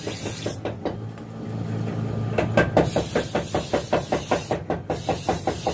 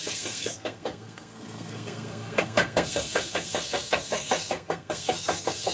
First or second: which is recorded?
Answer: first